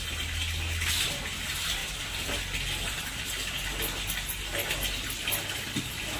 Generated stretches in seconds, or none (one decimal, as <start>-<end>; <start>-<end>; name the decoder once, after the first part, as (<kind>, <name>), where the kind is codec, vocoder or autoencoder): none